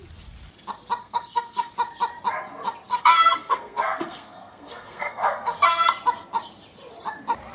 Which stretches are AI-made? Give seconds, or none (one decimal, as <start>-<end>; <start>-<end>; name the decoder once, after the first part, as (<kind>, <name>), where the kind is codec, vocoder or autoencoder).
1.0-1.7 (codec, SNAC); 2.9-5.9